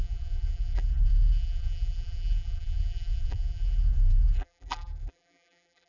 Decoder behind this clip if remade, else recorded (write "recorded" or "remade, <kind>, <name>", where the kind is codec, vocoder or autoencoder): remade, vocoder, BigVGAN v2